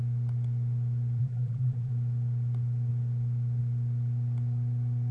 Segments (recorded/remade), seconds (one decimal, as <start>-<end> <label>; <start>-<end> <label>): 0.0-1.2 recorded; 1.2-1.9 remade; 1.9-5.1 recorded